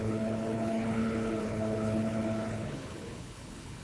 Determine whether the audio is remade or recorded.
remade